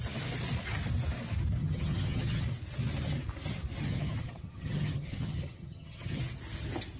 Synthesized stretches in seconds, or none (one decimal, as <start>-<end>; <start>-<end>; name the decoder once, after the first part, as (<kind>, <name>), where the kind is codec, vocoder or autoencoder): 1.6-2.4 (vocoder, HiFi-GAN); 3.8-6.2